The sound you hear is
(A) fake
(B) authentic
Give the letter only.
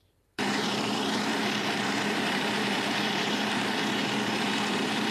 A